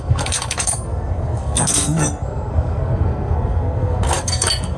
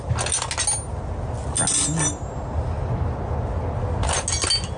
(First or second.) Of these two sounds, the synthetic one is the first